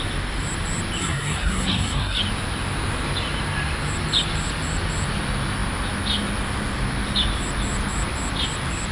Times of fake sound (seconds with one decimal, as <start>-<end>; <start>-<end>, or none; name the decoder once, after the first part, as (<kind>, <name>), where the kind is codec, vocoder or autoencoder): 1.0-2.2 (codec, SNAC)